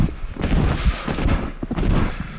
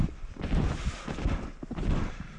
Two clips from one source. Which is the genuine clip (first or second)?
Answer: first